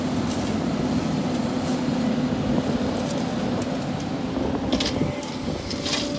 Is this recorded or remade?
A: recorded